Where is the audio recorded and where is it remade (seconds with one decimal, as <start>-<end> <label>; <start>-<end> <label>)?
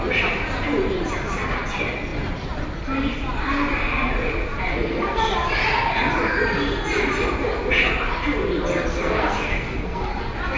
0.0-4.7 recorded; 4.7-5.2 remade; 5.2-8.9 recorded; 8.9-10.2 remade; 10.2-10.6 recorded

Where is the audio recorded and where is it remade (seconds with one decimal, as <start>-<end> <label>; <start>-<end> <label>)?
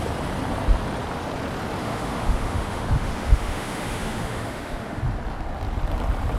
0.0-1.8 recorded; 1.8-5.0 remade; 5.0-6.4 recorded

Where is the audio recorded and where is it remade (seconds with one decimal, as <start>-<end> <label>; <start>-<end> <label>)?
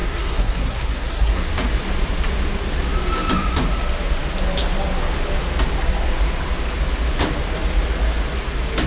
0.0-1.5 remade; 1.5-8.9 recorded